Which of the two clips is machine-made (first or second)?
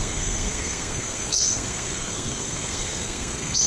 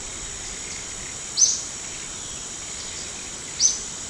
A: first